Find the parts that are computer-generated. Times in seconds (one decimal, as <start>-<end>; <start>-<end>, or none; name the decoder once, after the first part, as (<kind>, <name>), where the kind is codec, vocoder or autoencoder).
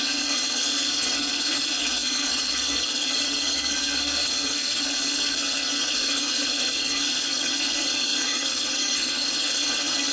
0.0-10.1 (codec, SNAC)